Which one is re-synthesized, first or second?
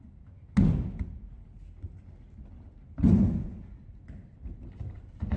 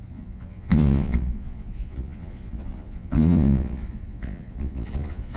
second